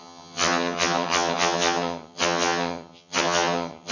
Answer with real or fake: fake